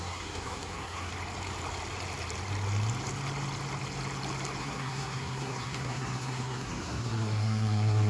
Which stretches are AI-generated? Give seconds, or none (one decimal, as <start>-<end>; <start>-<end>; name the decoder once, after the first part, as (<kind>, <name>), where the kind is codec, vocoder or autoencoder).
0.0-1.1 (codec, SNAC); 4.6-8.1